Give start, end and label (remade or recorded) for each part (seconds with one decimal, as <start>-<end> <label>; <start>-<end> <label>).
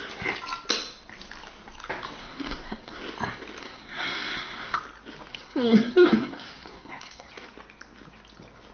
0.0-2.2 recorded; 2.2-3.0 remade; 3.0-3.6 recorded; 3.6-4.8 remade; 4.8-5.3 recorded; 5.3-7.3 remade; 7.3-8.7 recorded